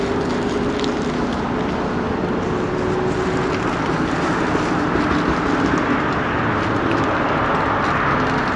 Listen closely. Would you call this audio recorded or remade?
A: recorded